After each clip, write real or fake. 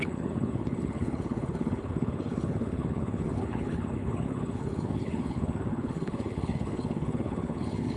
fake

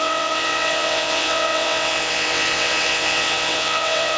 fake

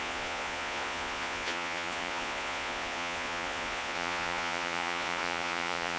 fake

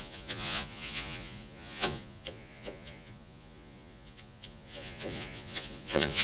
fake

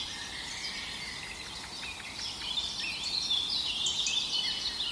real